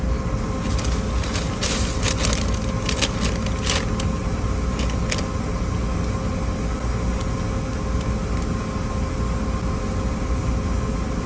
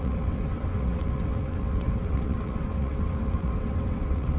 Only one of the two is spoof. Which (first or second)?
second